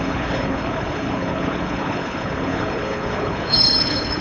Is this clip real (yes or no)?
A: no